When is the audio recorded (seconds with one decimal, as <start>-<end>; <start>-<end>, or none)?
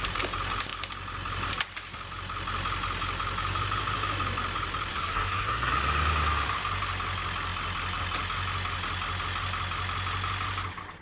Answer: 0.0-4.9; 5.7-11.0